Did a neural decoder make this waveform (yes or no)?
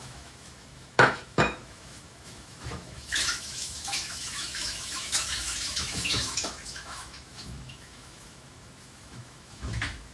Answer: yes